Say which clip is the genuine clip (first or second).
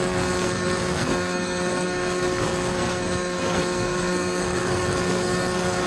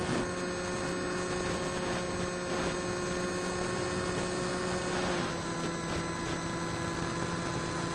second